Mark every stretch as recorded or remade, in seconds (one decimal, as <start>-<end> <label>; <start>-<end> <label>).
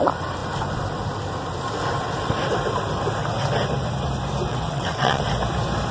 0.0-4.5 recorded; 4.5-5.2 remade; 5.2-5.9 recorded